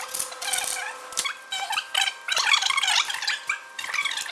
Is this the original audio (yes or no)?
yes